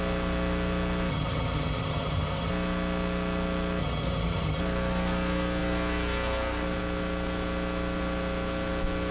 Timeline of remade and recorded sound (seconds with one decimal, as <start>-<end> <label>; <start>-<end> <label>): 0.0-1.1 recorded; 1.1-2.5 remade; 2.5-3.8 recorded; 3.8-4.6 remade; 4.6-9.1 recorded